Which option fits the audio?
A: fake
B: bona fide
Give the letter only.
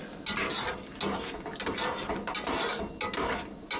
B